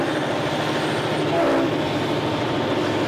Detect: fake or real real